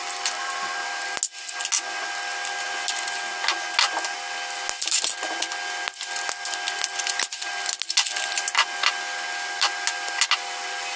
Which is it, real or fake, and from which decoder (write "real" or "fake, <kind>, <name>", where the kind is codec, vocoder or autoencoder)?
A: real